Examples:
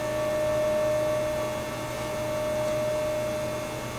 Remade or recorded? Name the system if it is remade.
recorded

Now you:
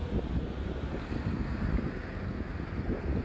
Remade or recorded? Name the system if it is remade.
recorded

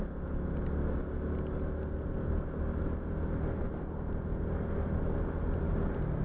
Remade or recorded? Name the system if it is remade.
recorded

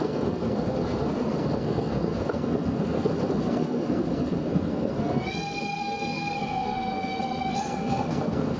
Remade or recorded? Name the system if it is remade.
remade, codec, SNAC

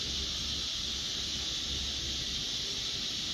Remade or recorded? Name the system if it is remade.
recorded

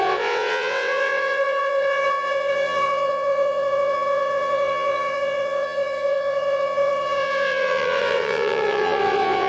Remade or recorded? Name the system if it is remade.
remade, vocoder, WaveNeXt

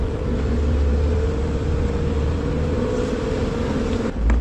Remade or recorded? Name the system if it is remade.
recorded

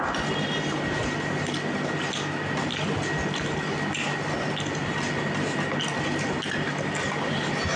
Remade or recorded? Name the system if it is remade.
recorded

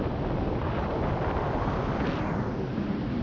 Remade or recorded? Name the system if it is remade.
recorded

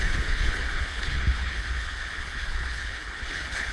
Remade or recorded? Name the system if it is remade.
remade, codec, HILCodec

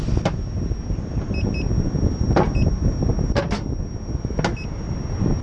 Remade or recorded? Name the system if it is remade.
recorded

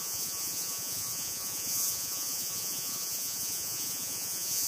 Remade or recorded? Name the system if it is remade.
remade, vocoder, Vocos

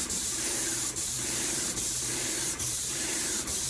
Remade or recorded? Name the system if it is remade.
remade, vocoder, BigVGAN v2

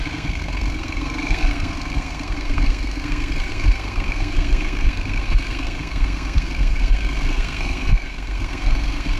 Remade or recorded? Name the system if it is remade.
remade, codec, SNAC